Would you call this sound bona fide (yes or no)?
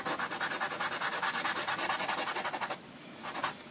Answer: yes